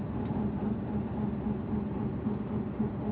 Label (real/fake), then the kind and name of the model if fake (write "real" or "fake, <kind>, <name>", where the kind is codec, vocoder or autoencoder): real